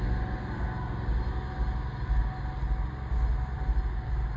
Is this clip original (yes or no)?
yes